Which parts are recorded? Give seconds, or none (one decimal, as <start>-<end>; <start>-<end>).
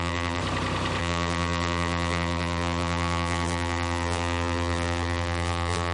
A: 0.4-1.0